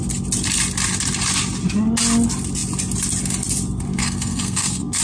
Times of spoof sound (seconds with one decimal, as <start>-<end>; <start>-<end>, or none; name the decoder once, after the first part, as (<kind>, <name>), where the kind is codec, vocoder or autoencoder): 3.9-5.0 (codec, SNAC)